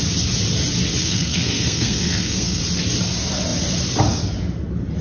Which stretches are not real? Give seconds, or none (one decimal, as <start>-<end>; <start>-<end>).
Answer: 1.0-2.6